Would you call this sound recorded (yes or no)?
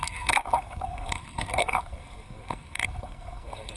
no